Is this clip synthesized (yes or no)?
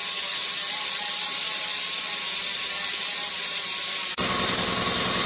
no